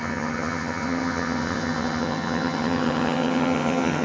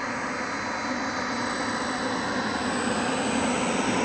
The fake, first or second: first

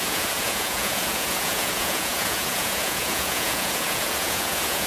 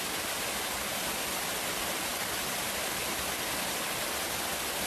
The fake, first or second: first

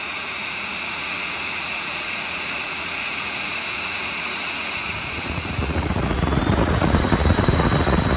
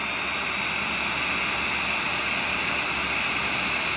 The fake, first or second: first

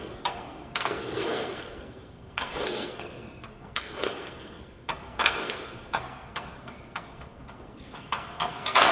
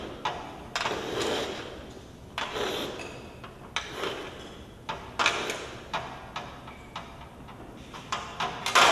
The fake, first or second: first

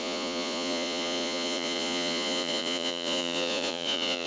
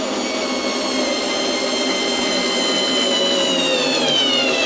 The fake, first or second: first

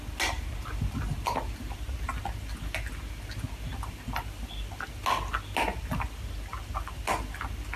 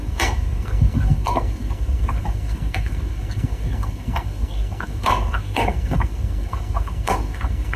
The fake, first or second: second